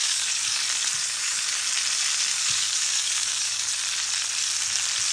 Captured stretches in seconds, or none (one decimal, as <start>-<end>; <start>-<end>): 0.6-1.0; 1.6-2.3; 3.7-5.1